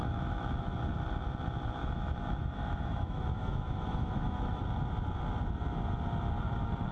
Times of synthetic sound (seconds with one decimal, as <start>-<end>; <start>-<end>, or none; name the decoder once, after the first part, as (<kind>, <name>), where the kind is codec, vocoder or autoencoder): 0.0-0.8 (autoencoder, DAC-VAE); 1.8-4.6